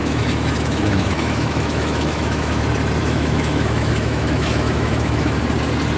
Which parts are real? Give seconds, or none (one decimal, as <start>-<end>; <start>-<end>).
2.6-3.0; 5.4-6.0